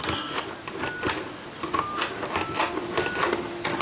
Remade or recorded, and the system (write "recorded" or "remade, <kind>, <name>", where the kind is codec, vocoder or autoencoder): recorded